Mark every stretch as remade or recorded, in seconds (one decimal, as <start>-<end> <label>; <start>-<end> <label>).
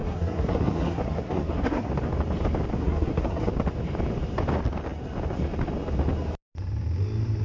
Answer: 0.0-1.9 remade; 1.9-2.7 recorded; 2.7-3.5 remade; 3.5-7.4 recorded